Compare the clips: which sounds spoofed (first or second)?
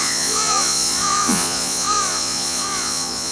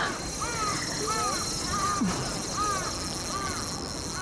first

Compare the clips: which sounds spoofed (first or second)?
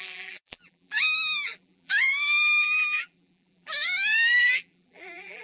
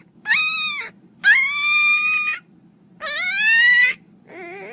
first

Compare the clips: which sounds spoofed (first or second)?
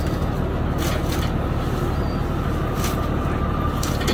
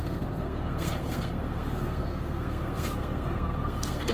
second